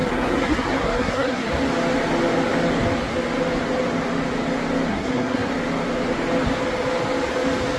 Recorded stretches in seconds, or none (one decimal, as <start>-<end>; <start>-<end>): 1.5-4.9; 5.5-7.8